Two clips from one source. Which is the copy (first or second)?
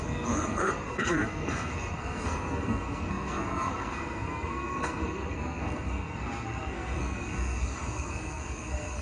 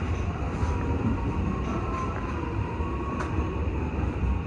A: first